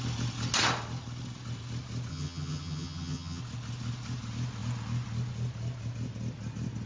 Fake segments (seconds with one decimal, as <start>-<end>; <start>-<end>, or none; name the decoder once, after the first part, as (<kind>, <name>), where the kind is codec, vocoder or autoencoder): 2.1-3.4 (vocoder, HiFi-GAN)